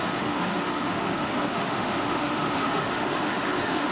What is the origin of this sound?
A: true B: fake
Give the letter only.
B